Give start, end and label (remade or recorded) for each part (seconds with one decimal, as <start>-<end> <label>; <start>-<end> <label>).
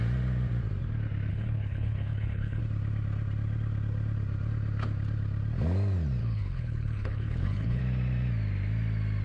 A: 0.0-1.3 recorded; 1.3-2.6 remade; 2.6-6.2 recorded; 6.2-7.8 remade; 7.8-9.2 recorded